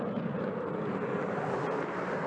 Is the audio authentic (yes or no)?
yes